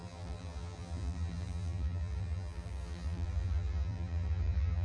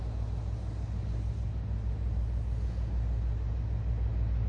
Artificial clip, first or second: first